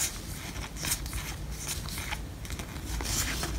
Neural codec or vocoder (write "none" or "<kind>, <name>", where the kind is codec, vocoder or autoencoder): none